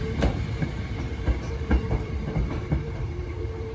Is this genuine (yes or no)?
no